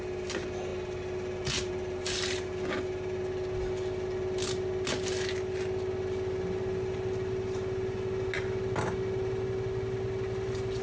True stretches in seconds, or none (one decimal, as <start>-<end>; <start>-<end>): 0.0-10.8